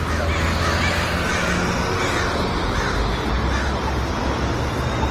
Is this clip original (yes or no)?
yes